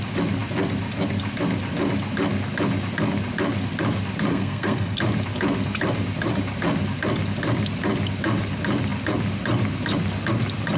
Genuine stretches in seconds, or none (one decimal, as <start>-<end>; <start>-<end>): 0.0-4.3; 5.0-10.8